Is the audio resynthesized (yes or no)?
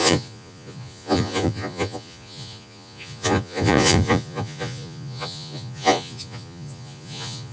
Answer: yes